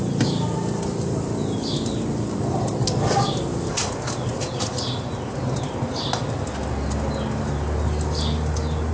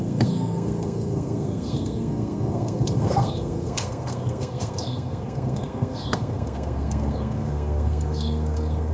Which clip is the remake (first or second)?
second